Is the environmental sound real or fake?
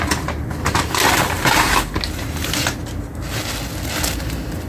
real